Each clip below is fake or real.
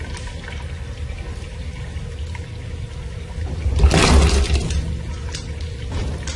real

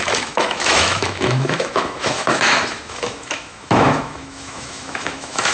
fake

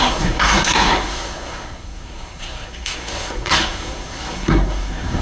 fake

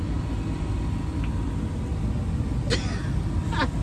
real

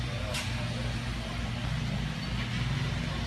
real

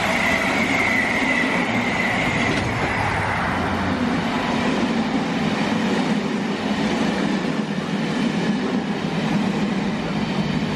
real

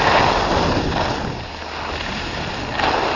real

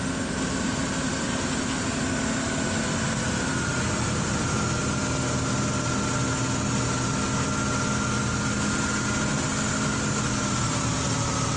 real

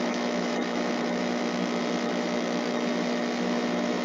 fake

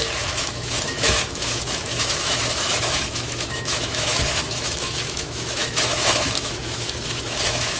fake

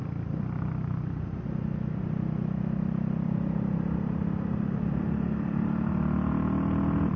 real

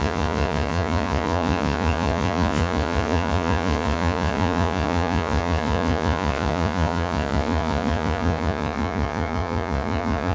fake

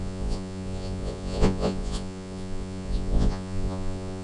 fake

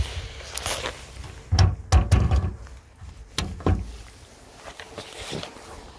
real